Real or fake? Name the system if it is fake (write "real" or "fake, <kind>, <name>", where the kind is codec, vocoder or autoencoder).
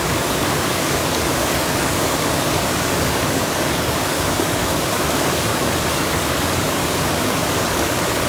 fake, codec, DAC